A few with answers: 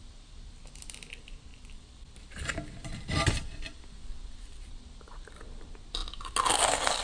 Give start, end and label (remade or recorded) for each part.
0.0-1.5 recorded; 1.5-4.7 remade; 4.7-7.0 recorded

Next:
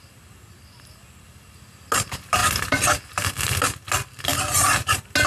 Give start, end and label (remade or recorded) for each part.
0.0-5.3 recorded